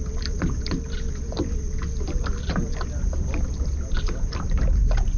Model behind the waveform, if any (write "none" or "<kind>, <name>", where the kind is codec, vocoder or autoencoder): none